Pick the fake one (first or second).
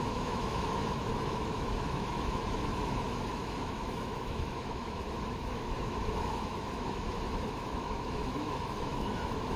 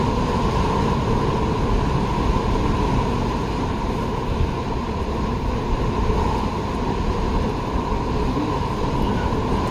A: first